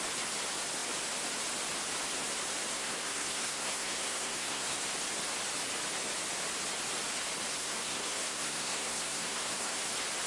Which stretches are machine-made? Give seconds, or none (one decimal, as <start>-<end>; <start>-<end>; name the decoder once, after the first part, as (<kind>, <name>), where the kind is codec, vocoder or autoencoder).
2.7-4.8 (codec, SNAC); 7.6-9.8